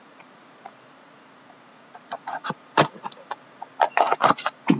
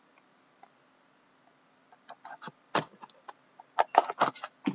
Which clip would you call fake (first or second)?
first